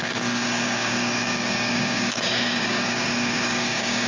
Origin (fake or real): fake